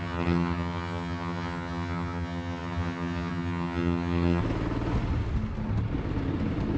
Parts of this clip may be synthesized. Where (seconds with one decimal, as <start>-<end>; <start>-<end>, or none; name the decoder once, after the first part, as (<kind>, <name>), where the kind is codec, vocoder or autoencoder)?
0.0-4.4 (vocoder, HiFi-GAN)